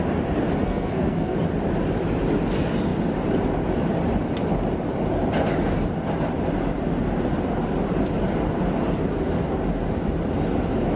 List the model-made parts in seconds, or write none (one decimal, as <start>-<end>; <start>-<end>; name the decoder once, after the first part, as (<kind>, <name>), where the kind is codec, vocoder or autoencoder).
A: 0.6-1.4 (codec, SNAC)